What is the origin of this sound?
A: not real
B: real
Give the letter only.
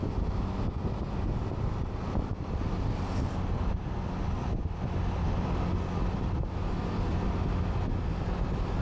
B